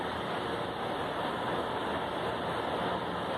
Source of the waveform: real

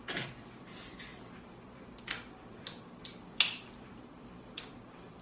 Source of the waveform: fake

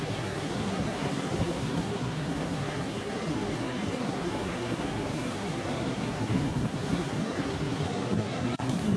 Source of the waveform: fake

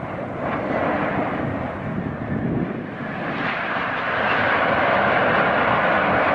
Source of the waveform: fake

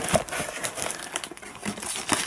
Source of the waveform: real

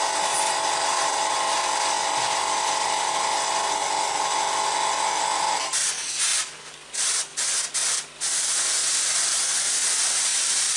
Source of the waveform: real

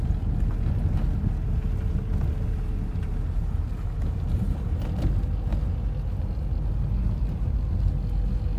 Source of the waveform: real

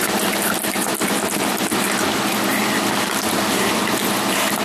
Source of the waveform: real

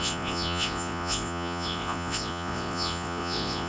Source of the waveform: fake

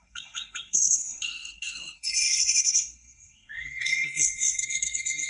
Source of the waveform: fake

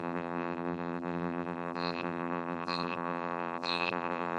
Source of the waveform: fake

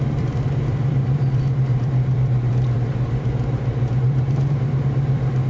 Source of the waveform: fake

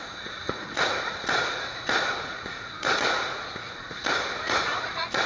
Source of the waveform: fake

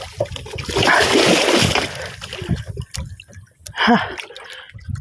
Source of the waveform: real